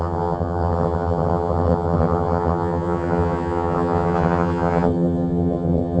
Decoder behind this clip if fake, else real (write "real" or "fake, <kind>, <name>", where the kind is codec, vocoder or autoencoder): fake, vocoder, HiFi-GAN